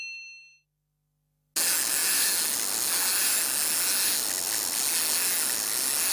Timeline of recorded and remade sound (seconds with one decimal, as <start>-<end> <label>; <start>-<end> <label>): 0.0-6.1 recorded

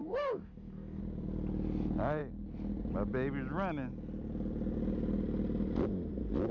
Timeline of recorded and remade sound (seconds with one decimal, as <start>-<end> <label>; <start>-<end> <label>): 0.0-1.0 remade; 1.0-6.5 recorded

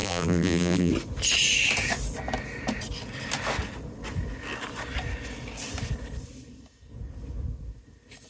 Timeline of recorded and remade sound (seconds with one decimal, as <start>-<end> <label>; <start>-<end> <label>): 0.0-0.9 remade; 0.9-8.3 recorded

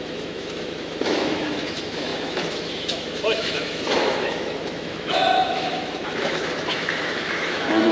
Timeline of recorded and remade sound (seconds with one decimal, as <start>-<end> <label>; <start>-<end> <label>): 0.0-7.9 remade

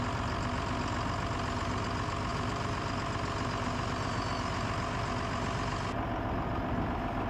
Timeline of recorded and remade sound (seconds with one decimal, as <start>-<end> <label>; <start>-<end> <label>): 0.0-2.3 recorded; 2.3-2.9 remade; 2.9-7.3 recorded

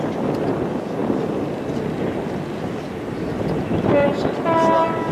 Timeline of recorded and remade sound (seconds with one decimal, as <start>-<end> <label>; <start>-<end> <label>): 0.0-5.1 recorded

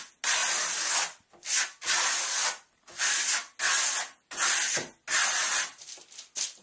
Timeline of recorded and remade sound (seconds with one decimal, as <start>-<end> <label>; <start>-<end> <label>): 0.0-6.6 recorded